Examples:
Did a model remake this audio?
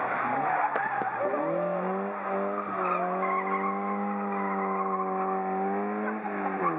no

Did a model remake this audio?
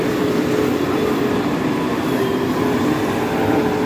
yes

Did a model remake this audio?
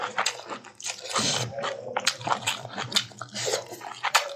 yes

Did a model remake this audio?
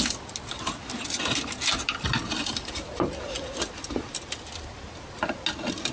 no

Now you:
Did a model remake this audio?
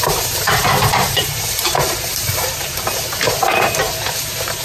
yes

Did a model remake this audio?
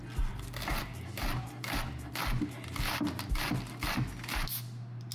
no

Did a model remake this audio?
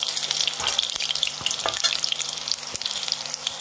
yes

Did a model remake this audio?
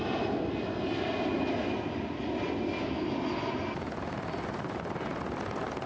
no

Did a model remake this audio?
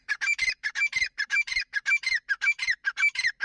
yes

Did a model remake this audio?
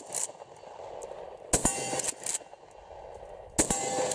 no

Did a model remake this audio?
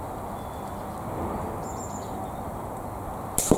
no